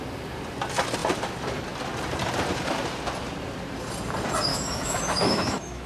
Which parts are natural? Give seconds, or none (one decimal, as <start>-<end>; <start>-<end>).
0.0-4.5